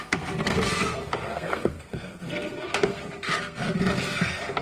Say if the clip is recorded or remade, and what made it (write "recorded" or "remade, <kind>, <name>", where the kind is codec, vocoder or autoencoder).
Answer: remade, codec, SNAC